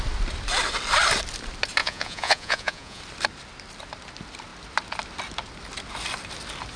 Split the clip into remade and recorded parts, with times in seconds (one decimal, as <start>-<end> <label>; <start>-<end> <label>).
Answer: 0.0-1.8 recorded; 1.8-3.0 remade; 3.0-6.8 recorded